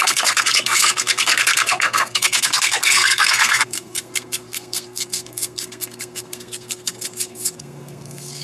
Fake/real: fake